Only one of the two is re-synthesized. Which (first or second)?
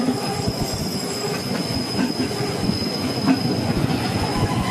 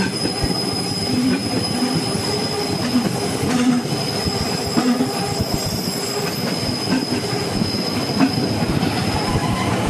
first